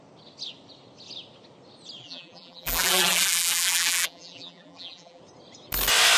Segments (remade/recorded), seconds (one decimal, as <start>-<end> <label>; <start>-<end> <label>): 0.0-2.0 recorded; 2.0-5.2 remade; 5.2-6.2 recorded